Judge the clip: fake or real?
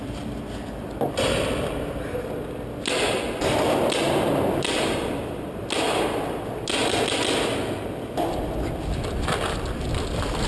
real